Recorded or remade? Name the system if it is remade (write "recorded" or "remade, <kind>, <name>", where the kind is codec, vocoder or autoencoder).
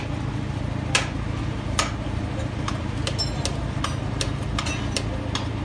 recorded